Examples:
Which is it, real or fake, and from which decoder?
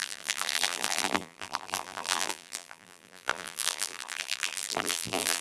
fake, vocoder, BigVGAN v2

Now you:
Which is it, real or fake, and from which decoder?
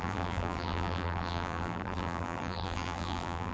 fake, vocoder, BigVGAN v2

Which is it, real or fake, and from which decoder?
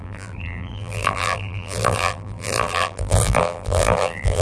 fake, vocoder, BigVGAN v2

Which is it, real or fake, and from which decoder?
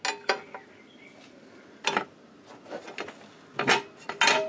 real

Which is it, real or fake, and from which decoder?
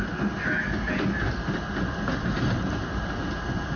real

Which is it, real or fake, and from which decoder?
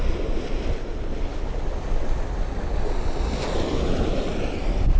real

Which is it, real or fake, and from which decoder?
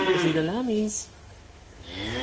fake, autoencoder, DAC-VAE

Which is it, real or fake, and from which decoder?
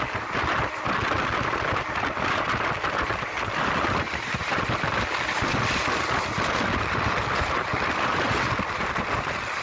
real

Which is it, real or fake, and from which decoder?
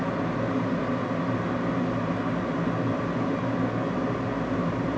real